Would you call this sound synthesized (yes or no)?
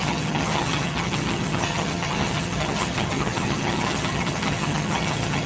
yes